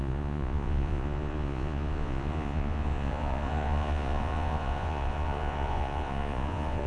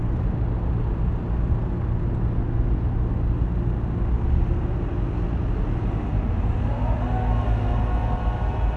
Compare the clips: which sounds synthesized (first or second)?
first